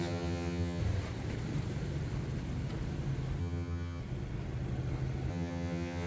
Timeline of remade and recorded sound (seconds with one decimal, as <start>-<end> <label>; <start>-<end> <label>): 0.0-0.8 remade; 0.8-3.4 recorded; 3.4-4.0 remade; 4.0-5.3 recorded; 5.3-6.1 remade